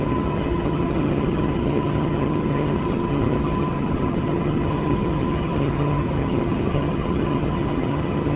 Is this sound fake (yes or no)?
yes